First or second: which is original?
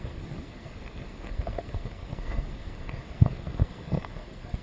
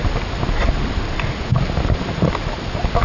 second